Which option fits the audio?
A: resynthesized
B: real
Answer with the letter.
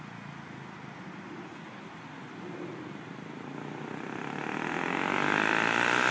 B